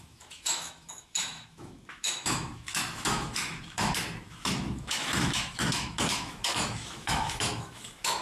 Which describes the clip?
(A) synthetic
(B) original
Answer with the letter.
A